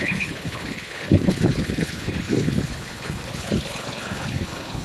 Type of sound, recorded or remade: remade